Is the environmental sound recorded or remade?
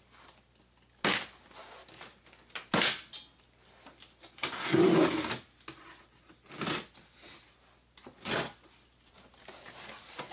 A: recorded